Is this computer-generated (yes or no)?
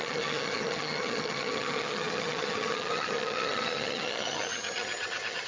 yes